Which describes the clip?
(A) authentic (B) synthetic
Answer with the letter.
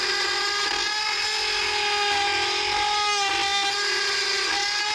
A